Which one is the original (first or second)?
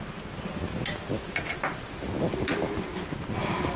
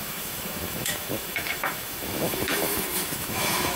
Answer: first